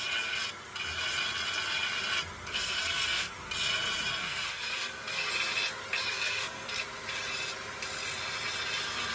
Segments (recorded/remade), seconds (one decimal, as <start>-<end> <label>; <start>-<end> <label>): 0.0-2.5 recorded; 2.5-3.3 remade; 3.3-4.2 recorded; 4.2-5.3 remade; 5.3-6.0 recorded; 6.0-6.8 remade; 6.8-9.1 recorded